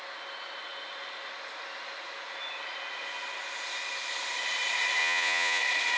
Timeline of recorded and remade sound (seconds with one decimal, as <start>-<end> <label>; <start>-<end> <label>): 0.0-5.0 recorded; 5.0-5.6 remade; 5.6-6.0 recorded